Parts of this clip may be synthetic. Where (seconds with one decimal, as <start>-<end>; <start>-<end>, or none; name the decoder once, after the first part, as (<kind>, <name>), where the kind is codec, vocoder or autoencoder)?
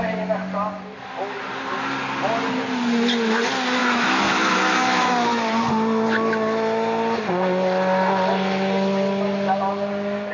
3.8-5.1 (autoencoder, DAC-VAE)